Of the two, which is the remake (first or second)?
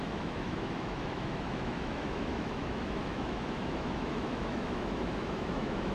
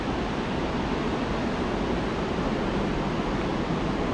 first